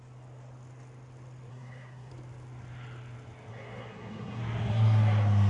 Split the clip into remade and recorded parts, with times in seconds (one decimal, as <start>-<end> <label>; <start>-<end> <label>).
0.0-1.5 recorded; 1.5-2.1 remade; 2.1-3.5 recorded; 3.5-4.4 remade; 4.4-5.5 recorded